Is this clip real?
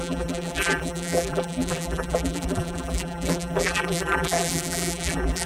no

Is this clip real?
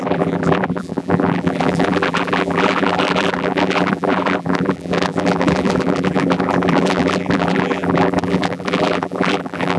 no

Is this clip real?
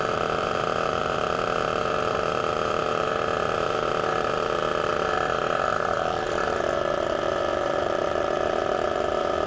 no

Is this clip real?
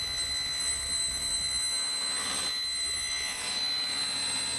yes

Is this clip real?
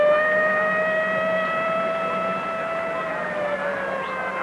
yes